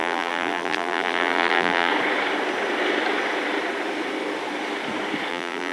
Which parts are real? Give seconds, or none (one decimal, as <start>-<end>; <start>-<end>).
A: 1.9-5.3